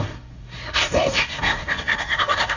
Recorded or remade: remade